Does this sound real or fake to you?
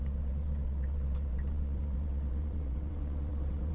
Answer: fake